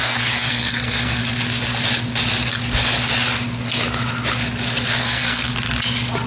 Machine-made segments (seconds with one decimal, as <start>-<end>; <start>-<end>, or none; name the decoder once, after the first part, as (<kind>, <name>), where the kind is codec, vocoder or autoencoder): 0.0-1.2 (codec, SNAC); 5.0-5.5